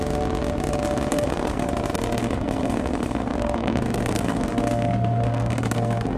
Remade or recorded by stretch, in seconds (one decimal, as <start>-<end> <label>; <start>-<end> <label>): 0.0-1.1 recorded; 1.1-1.7 remade; 1.7-2.2 recorded; 2.2-6.2 remade